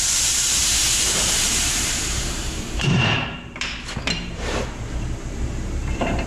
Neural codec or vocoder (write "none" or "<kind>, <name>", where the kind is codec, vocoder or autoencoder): vocoder, BigVGAN v2